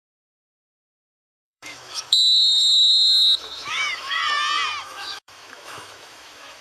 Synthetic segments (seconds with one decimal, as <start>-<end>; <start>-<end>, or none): 0.0-4.2; 4.8-6.6